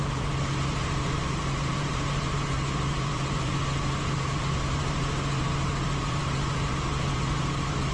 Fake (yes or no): yes